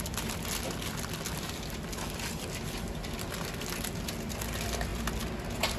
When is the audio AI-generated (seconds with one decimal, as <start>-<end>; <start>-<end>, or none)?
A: none